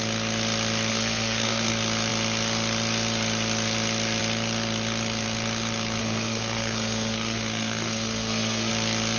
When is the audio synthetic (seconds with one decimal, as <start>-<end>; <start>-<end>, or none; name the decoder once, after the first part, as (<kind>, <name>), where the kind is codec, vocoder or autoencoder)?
0.9-1.7 (codec, SNAC); 6.0-8.7